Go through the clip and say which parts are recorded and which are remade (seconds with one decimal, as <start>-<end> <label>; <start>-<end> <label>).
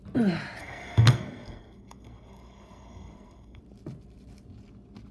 0.0-0.6 recorded; 0.6-3.6 remade; 3.6-5.1 recorded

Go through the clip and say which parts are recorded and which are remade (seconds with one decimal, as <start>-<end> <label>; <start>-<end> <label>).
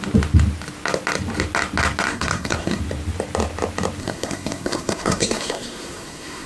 0.0-2.1 recorded; 2.1-2.8 remade; 2.8-4.0 recorded; 4.0-6.5 remade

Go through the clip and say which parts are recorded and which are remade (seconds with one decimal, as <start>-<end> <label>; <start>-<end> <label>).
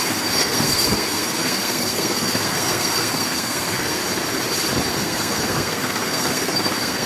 0.0-4.0 remade; 4.0-4.9 recorded; 4.9-7.1 remade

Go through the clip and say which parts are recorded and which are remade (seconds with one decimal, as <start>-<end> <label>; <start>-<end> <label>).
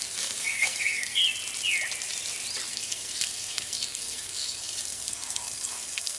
0.0-1.2 remade; 1.2-2.7 recorded; 2.7-6.2 remade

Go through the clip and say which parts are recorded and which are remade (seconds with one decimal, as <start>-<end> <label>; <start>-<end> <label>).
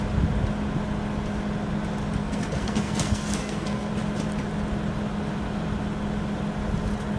0.0-2.2 recorded; 2.2-3.9 remade; 3.9-7.2 recorded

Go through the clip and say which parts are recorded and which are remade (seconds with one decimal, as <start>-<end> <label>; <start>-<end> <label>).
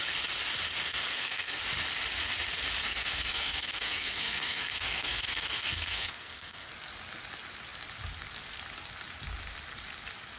0.0-0.8 recorded; 0.8-1.6 remade; 1.6-2.8 recorded; 2.8-6.7 remade; 6.7-10.4 recorded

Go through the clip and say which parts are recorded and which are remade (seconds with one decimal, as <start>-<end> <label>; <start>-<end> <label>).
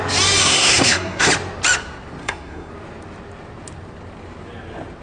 0.0-0.4 recorded; 0.4-1.3 remade; 1.3-2.2 recorded; 2.2-2.7 remade; 2.7-5.0 recorded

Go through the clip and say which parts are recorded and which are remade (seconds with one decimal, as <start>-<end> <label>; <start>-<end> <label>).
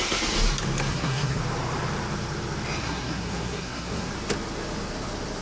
0.0-0.9 recorded; 0.9-1.4 remade; 1.4-2.8 recorded; 2.8-4.1 remade; 4.1-5.4 recorded